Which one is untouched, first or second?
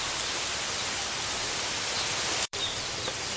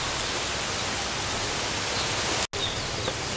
second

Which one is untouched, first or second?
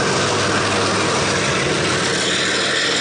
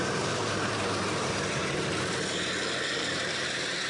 first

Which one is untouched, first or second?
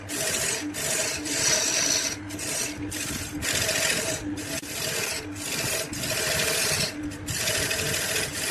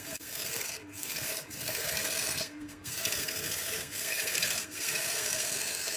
first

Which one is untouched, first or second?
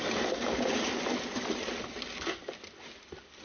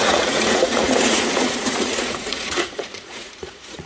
first